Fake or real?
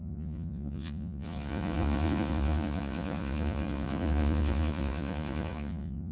fake